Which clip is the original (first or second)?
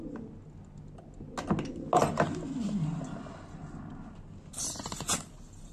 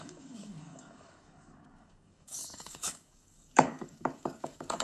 first